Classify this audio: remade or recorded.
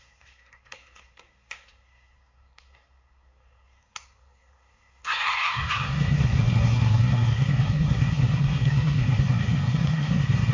remade